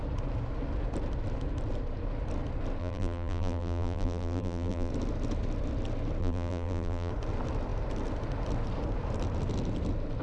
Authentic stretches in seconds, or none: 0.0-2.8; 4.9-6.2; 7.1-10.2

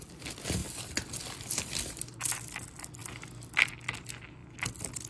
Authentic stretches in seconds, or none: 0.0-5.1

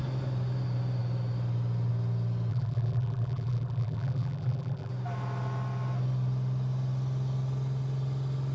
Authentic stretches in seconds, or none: 0.0-2.5; 4.9-8.5

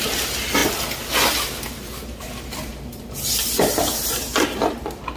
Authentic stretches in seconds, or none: 0.6-1.7